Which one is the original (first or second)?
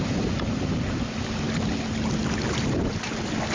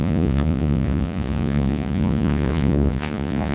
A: first